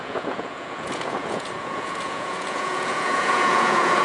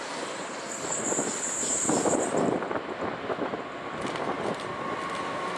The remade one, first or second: first